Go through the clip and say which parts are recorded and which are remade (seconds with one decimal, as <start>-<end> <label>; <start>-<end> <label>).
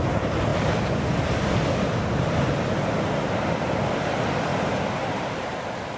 0.0-4.5 recorded; 4.5-6.0 remade